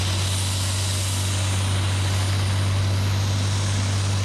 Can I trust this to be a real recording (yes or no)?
yes